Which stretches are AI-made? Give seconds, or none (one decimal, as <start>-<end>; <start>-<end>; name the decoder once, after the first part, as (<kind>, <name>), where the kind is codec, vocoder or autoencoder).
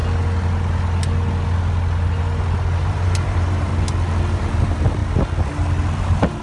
2.9-3.7 (vocoder, BigVGAN v2); 4.3-5.0; 6.0-6.4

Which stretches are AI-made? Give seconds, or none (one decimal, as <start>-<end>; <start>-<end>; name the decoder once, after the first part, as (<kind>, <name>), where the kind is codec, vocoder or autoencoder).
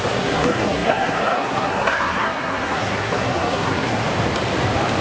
0.0-4.0 (codec, SNAC)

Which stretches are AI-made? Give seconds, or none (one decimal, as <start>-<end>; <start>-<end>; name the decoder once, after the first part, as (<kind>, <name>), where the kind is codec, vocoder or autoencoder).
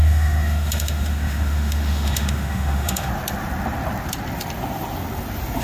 0.0-3.1 (autoencoder, DAC-VAE)